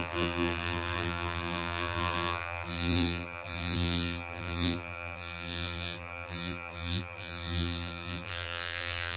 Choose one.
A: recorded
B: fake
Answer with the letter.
B